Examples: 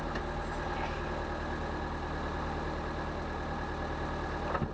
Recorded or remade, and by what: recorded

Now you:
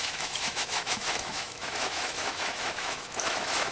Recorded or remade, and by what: remade, autoencoder, DAC-VAE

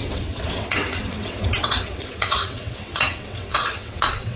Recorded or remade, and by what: remade, vocoder, WaveNeXt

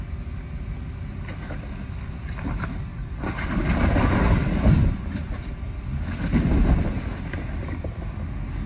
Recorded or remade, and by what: recorded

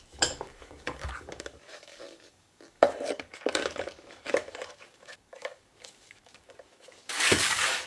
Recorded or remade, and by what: remade, codec, DAC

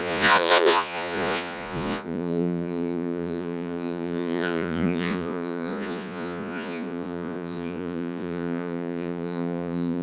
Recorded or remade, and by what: remade, vocoder, Vocos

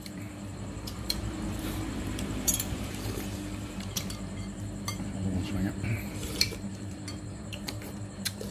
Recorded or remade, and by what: remade, vocoder, BigVGAN v2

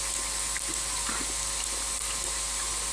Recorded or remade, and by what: recorded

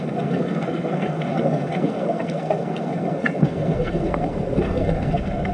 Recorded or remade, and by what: remade, codec, SNAC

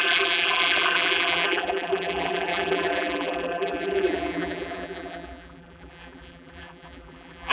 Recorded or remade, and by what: remade, vocoder, BigVGAN v2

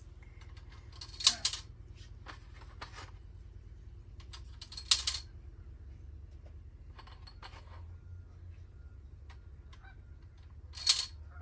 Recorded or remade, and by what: recorded